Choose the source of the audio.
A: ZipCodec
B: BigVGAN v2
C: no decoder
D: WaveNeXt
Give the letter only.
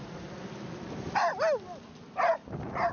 C